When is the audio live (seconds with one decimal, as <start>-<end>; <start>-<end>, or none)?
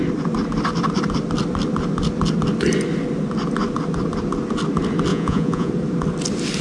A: 0.0-5.1; 5.7-6.6